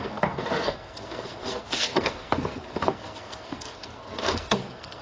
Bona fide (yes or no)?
no